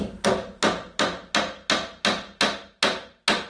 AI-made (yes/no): no